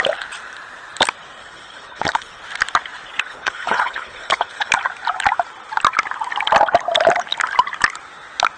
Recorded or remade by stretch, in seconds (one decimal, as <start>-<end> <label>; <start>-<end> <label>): 0.0-1.4 recorded; 1.4-2.4 remade; 2.4-3.3 recorded; 3.3-4.7 remade; 4.7-8.6 recorded